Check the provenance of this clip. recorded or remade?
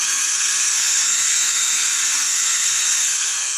remade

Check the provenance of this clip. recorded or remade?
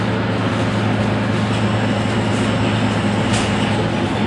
recorded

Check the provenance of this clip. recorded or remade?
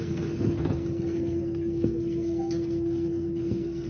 remade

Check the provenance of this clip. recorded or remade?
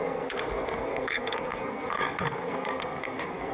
remade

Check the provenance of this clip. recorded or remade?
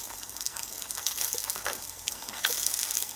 remade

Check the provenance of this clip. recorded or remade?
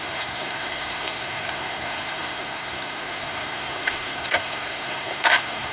remade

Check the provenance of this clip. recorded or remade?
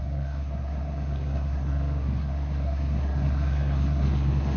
remade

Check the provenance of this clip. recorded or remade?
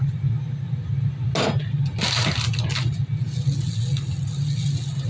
recorded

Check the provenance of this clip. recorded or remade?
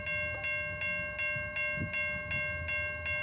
recorded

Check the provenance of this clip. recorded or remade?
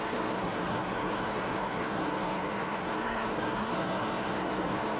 remade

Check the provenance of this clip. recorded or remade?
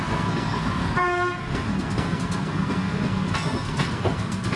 remade